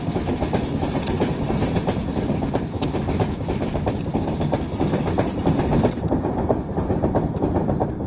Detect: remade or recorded recorded